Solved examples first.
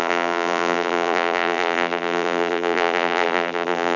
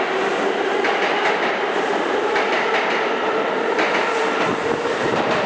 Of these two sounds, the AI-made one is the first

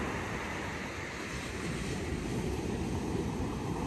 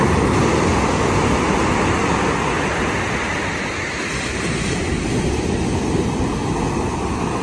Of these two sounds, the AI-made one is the first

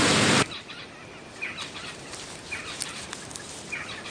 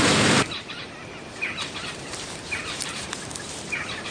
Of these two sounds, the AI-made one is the second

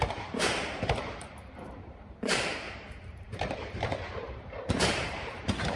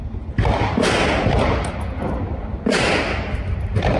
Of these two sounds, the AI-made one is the first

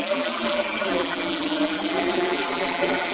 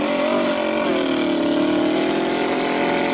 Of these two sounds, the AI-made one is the first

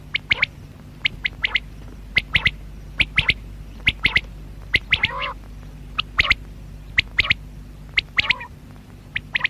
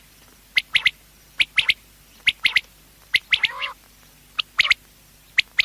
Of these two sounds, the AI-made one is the first